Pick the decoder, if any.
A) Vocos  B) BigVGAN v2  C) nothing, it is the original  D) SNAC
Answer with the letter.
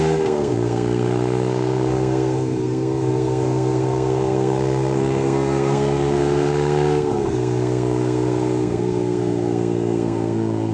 D